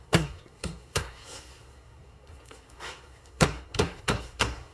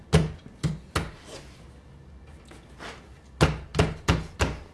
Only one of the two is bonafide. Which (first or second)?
second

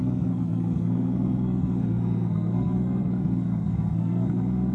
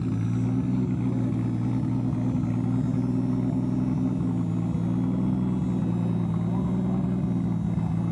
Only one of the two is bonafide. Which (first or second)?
second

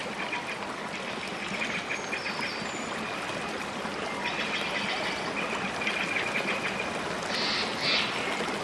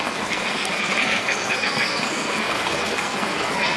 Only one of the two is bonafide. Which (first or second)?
first